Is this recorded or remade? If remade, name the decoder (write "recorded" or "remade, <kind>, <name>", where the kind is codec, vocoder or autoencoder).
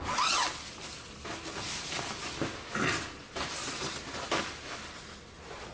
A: recorded